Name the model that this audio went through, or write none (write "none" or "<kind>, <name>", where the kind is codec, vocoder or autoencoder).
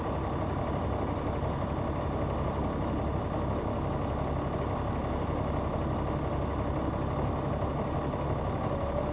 none